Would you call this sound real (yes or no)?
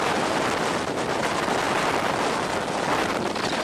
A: yes